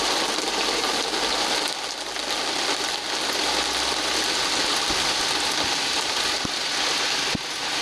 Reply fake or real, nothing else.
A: real